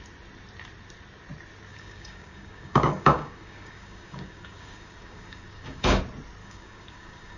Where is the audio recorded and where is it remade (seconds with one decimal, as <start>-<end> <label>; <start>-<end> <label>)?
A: 0.0-1.7 recorded; 1.7-6.0 remade; 6.0-6.4 recorded; 6.4-7.4 remade